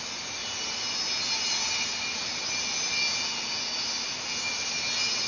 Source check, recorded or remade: recorded